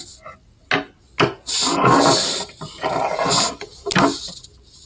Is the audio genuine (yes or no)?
yes